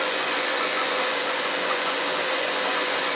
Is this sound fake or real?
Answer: fake